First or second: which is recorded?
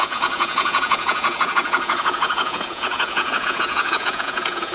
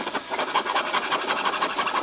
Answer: second